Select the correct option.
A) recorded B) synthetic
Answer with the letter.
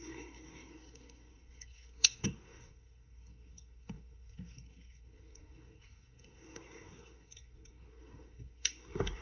B